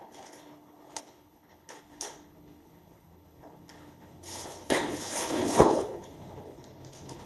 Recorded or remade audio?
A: remade